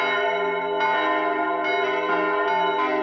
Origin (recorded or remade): recorded